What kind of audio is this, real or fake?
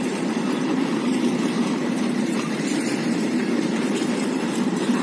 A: fake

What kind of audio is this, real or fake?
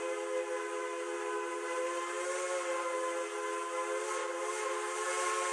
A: real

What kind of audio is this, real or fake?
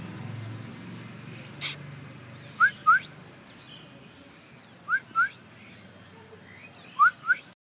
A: real